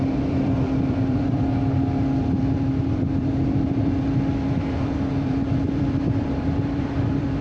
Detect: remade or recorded remade